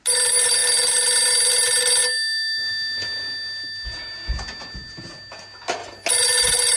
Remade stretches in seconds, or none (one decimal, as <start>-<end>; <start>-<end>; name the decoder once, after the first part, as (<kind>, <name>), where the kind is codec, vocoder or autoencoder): 5.8-6.8 (vocoder, BigVGAN v2)